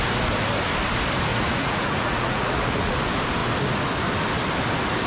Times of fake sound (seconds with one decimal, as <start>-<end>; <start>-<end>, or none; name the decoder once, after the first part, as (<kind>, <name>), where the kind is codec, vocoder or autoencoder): 1.3-2.9 (vocoder, Vocos)